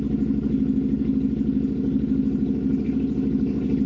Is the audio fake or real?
real